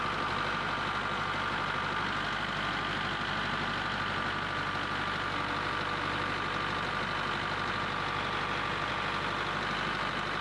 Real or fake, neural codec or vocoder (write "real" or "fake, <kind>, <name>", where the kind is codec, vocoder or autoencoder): real